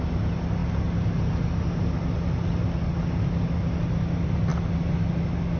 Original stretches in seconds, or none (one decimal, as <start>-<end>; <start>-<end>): 0.0-5.6